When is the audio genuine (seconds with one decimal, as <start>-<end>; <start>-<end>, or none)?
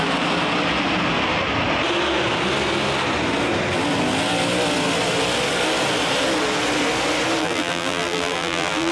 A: 0.0-7.4